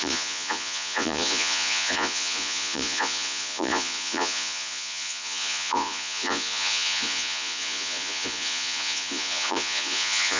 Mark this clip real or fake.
fake